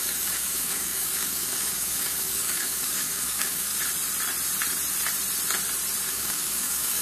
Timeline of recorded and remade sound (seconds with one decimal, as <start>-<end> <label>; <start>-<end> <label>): 0.0-3.7 remade; 3.7-6.1 recorded; 6.1-7.0 remade